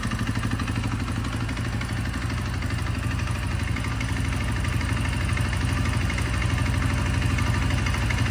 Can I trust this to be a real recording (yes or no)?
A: yes